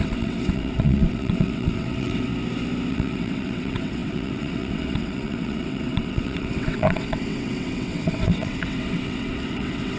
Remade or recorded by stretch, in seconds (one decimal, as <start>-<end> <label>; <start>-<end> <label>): 0.0-2.3 remade; 2.3-2.9 recorded; 2.9-10.0 remade